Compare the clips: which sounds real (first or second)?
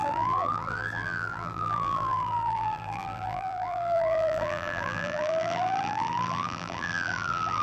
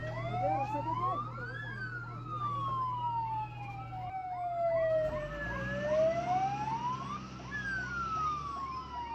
second